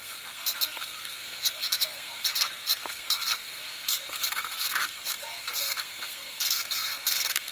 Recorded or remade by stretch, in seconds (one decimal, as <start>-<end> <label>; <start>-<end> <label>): 0.0-7.5 remade